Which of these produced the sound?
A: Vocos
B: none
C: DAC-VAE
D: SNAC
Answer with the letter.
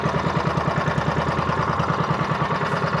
B